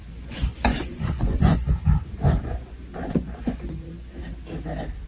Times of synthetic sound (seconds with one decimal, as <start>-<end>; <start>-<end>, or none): 0.0-4.2